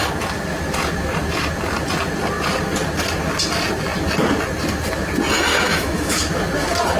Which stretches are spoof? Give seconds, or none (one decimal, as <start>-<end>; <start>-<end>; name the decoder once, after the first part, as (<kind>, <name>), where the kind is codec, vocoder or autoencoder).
5.5-6.3 (autoencoder, DAC-VAE)